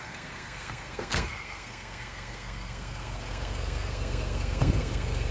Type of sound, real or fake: fake